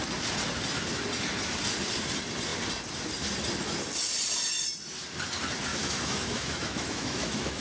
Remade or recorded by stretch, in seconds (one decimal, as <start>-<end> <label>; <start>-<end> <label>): 0.0-5.7 recorded; 5.7-7.6 remade